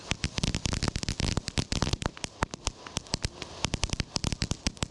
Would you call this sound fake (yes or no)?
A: no